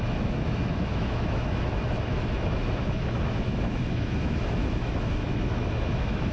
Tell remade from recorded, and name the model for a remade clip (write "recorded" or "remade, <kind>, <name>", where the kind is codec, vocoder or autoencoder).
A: remade, autoencoder, DAC-VAE